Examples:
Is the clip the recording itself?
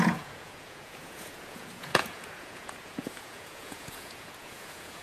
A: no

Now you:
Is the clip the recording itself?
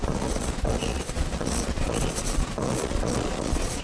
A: no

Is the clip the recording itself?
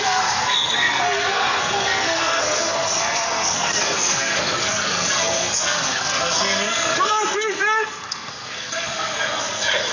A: no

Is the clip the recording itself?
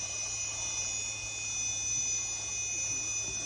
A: yes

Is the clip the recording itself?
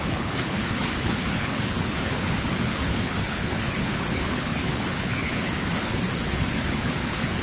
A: no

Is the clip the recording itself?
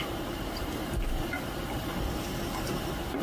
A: yes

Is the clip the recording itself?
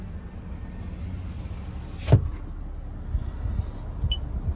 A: yes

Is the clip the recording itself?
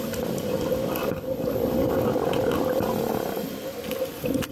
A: yes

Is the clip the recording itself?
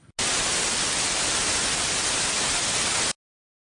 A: yes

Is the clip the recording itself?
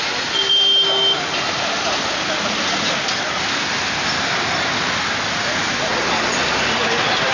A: yes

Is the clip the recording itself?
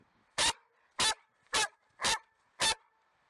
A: yes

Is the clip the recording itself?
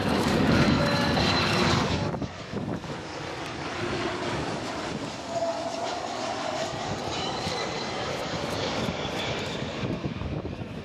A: no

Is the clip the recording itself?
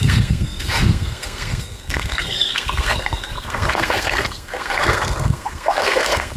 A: no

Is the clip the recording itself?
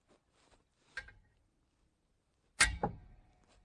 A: yes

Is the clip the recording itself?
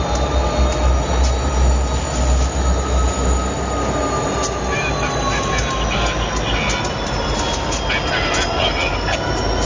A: yes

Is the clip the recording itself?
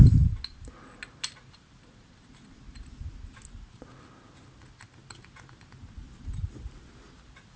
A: yes